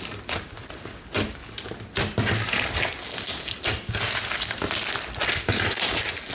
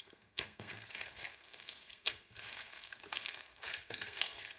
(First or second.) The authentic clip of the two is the first